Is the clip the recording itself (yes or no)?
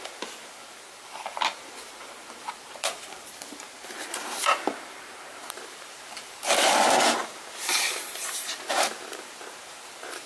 no